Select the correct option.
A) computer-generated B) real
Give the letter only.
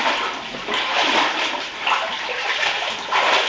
B